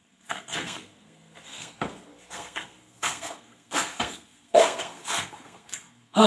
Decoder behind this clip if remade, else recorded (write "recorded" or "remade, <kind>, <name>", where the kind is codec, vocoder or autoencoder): remade, codec, SNAC